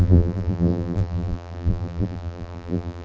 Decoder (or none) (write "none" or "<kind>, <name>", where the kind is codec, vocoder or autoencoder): vocoder, BigVGAN v2